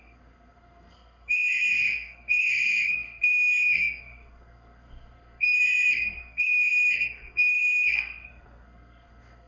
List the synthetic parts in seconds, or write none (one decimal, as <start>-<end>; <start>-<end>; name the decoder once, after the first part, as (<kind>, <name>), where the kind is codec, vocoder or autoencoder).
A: 0.0-9.5 (codec, SNAC)